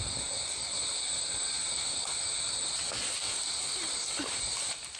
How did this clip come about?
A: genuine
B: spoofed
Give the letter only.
A